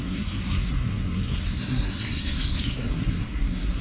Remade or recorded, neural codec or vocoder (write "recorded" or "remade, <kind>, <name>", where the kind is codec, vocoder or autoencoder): remade, codec, SNAC